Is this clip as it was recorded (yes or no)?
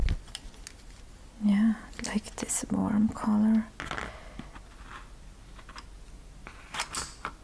yes